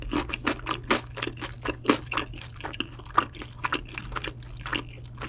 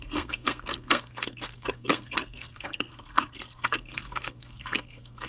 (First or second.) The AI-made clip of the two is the second